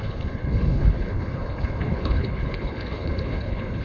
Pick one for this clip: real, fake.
fake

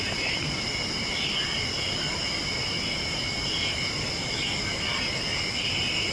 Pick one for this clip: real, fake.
real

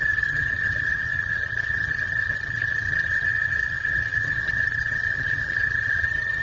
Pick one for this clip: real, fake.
fake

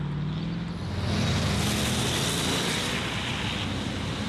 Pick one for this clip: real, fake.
real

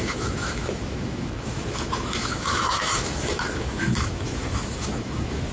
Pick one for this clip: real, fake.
fake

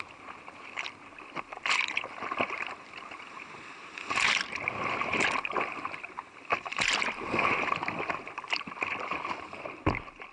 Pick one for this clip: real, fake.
fake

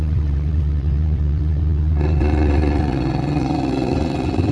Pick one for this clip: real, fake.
fake